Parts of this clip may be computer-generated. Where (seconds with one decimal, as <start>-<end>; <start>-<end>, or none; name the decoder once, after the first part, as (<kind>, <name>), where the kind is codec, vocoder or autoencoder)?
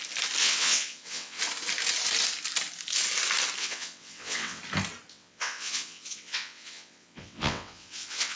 0.4-1.4 (vocoder, WaveNeXt); 3.6-4.6; 5.1-8.4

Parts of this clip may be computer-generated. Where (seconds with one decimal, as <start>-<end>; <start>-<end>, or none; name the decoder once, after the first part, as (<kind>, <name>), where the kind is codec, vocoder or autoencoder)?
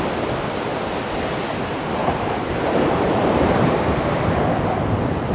2.0-3.7 (vocoder, BigVGAN v2)